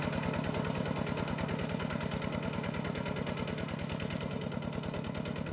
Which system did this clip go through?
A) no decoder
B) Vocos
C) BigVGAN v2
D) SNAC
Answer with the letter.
A